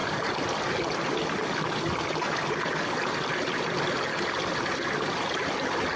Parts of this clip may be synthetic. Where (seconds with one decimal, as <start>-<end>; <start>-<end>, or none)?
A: none